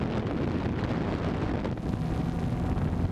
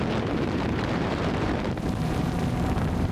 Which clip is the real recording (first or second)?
first